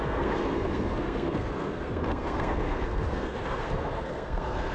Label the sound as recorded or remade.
remade